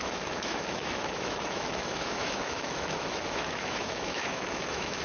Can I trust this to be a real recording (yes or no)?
no